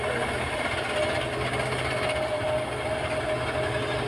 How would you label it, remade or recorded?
recorded